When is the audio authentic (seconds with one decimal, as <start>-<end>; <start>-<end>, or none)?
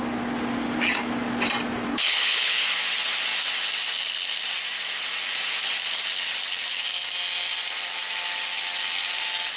0.0-1.9; 2.6-9.6